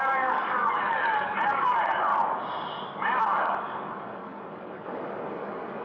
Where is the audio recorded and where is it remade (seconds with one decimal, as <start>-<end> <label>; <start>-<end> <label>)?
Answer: 0.0-2.1 remade; 2.1-3.2 recorded; 3.2-5.8 remade